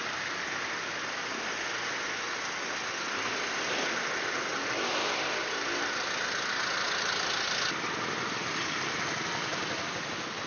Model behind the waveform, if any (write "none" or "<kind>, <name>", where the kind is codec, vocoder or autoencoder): none